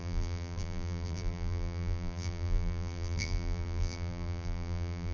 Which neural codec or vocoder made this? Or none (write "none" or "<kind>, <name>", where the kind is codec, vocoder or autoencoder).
vocoder, BigVGAN v2